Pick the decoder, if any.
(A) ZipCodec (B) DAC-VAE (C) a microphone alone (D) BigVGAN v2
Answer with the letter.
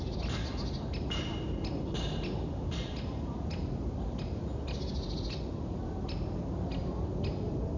C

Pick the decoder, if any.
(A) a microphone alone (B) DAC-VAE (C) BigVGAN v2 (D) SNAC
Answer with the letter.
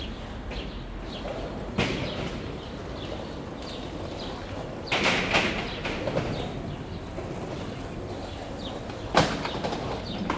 A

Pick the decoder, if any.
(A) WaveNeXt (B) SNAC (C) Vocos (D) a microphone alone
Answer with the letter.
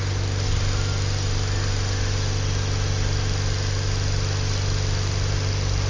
D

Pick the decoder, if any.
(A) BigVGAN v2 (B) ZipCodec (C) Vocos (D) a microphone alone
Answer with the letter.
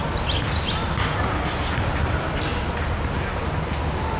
D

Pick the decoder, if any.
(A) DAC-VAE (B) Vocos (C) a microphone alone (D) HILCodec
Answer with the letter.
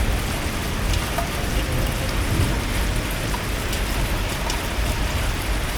C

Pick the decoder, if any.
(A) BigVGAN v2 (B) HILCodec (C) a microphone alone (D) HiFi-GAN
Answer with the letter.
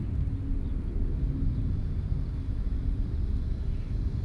C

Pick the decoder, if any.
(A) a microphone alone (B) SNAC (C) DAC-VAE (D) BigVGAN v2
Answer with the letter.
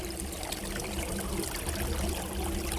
A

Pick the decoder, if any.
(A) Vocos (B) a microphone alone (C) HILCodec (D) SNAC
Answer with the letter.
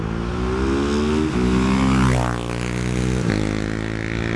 B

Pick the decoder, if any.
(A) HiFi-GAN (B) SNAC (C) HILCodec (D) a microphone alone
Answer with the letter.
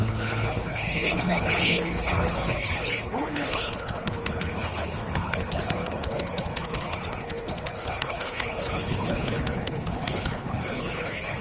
C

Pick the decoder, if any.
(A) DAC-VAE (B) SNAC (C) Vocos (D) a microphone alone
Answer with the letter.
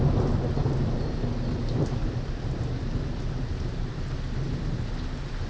D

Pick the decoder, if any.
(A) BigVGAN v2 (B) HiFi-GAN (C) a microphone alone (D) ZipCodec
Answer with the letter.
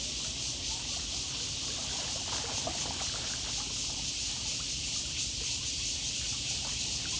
C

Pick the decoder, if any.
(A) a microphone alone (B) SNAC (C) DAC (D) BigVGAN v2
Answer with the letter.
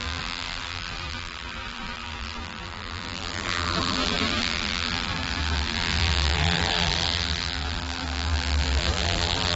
D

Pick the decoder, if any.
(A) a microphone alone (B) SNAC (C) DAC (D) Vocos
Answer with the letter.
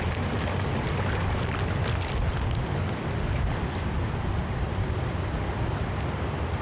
A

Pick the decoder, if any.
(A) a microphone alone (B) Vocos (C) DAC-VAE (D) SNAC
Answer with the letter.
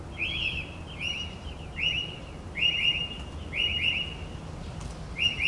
A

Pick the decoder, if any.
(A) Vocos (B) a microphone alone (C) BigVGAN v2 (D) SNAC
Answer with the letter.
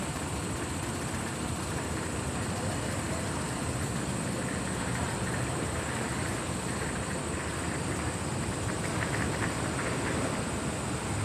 C